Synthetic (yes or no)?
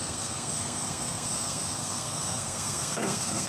yes